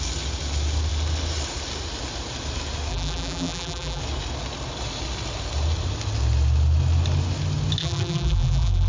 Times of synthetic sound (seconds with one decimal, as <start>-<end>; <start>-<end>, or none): 2.9-4.0; 7.8-8.9